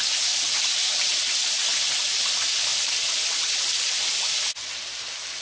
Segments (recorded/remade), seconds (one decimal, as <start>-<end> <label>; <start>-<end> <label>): 0.0-5.4 recorded